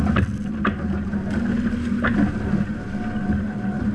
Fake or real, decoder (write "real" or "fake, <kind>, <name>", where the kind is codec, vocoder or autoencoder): real